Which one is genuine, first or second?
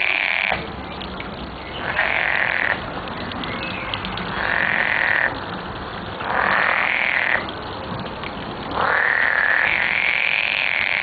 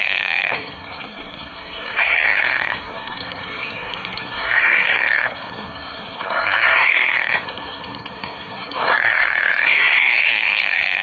first